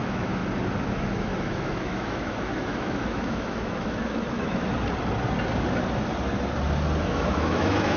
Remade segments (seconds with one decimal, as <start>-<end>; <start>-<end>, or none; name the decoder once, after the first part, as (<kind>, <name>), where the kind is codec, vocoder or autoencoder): 0.0-0.4 (autoencoder, DAC-VAE); 0.9-4.6; 7.0-8.0